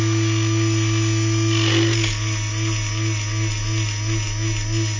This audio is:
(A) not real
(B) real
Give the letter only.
B